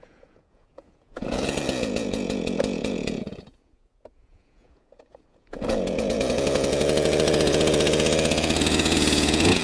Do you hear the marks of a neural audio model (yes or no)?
yes